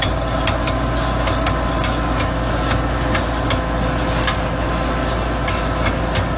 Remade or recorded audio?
recorded